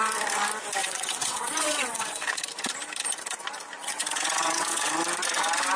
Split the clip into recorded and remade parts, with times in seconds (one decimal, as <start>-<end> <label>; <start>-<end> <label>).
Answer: 0.0-0.8 recorded; 0.8-2.4 remade; 2.4-3.8 recorded; 3.8-4.9 remade; 4.9-5.8 recorded